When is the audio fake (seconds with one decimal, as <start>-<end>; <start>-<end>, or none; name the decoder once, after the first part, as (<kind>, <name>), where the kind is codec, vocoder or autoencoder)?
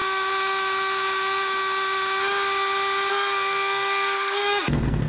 3.1-5.1 (codec, SNAC)